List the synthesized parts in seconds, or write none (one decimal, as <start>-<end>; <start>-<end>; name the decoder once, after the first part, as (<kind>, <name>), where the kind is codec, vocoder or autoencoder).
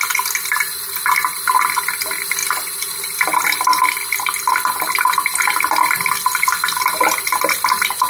none